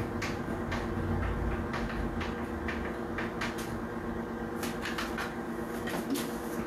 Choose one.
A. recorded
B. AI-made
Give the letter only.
A